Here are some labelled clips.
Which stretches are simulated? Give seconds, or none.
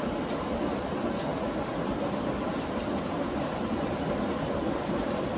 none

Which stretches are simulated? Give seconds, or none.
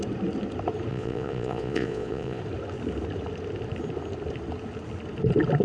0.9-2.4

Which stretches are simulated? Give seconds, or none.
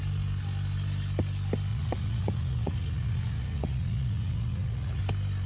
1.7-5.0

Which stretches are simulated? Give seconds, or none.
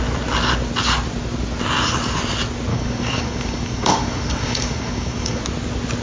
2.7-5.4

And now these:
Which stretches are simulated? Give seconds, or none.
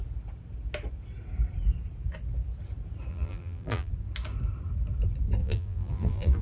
3.1-3.9; 5.4-6.4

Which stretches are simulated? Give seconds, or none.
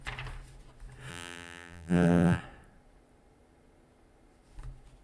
1.1-2.4